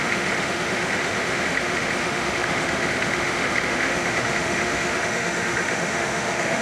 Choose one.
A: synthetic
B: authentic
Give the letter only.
A